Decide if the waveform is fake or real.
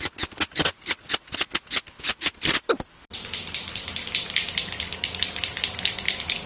real